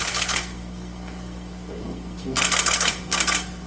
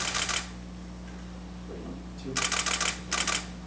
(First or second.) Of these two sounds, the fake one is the first